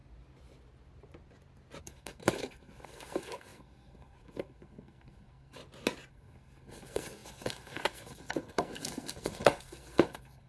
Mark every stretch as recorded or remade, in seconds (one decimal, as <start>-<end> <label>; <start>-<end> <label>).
0.0-1.8 recorded; 1.8-5.6 remade; 5.6-6.1 recorded; 6.1-10.5 remade